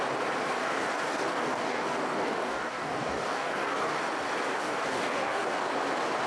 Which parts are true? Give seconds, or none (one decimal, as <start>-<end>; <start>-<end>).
0.0-0.6; 4.0-4.5; 5.7-6.3